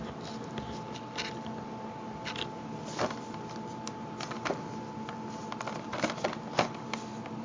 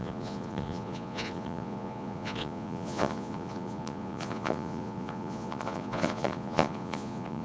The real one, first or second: first